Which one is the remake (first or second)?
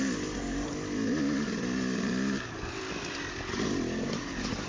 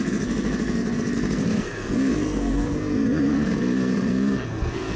second